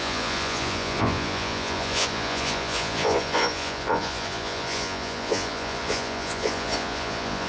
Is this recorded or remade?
remade